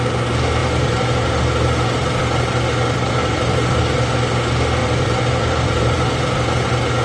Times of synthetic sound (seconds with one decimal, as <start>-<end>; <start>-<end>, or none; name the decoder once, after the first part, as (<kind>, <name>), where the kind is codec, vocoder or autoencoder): 0.6-1.4 (vocoder, BigVGAN v2); 3.2-3.8; 4.8-6.1